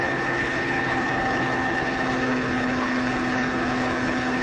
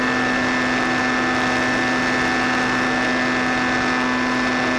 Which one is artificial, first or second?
first